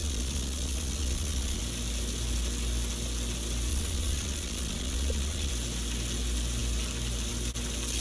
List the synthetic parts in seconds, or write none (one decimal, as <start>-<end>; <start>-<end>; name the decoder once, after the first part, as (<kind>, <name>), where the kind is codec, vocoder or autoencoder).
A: 0.0-1.6 (vocoder, Vocos); 3.7-5.5